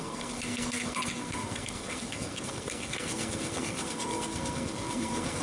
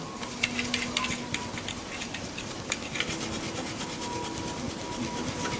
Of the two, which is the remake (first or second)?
first